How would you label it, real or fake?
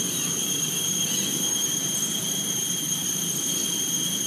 fake